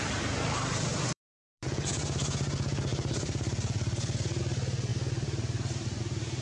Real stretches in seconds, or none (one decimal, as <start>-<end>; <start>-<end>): 0.0-0.9; 1.7-2.9; 4.4-4.9; 6.0-6.4